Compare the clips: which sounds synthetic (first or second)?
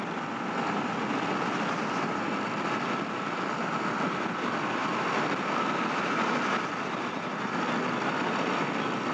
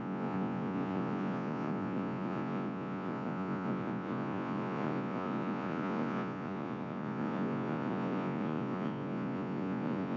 second